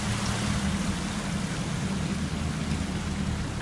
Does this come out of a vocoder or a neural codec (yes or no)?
no